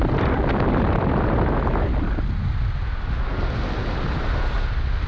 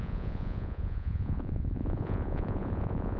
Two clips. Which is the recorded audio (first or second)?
first